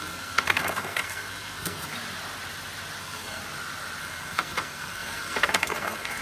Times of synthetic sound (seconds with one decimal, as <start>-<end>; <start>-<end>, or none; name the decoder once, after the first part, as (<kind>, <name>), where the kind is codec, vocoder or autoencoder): 0.0-1.9 (codec, SNAC); 3.0-3.4; 4.0-6.2